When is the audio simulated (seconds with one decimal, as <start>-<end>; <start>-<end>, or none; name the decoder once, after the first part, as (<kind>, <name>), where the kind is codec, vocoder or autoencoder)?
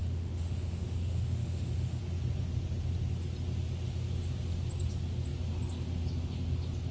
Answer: 0.0-2.0 (autoencoder, DAC-VAE)